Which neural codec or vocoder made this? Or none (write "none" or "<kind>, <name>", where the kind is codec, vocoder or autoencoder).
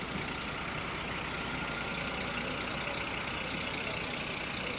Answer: none